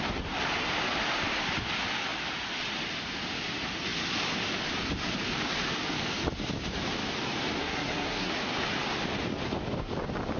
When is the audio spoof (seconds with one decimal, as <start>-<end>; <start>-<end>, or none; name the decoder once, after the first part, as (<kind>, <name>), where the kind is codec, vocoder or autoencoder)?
7.6-8.3 (codec, SNAC)